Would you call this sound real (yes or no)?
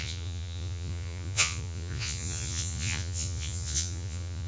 no